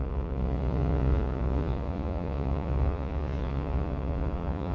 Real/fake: fake